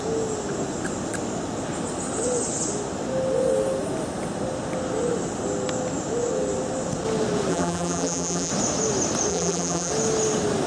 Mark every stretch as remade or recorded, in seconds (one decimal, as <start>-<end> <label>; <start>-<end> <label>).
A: 0.0-7.5 recorded; 7.5-8.5 remade; 8.5-9.3 recorded; 9.3-9.9 remade; 9.9-10.7 recorded